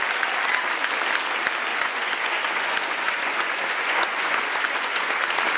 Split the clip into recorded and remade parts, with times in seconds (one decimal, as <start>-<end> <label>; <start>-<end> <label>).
0.0-1.7 recorded; 1.7-5.1 remade; 5.1-5.6 recorded